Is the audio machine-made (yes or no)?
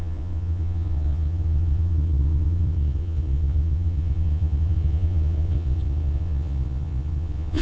yes